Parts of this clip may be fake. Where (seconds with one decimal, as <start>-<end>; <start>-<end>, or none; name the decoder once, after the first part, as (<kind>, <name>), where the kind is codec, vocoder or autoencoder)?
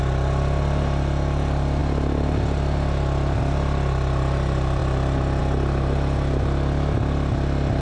none